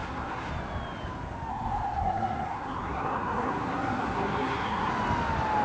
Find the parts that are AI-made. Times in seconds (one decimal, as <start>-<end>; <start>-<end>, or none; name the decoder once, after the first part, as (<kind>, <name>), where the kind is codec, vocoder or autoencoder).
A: 0.0-0.5 (codec, SNAC); 1.5-4.9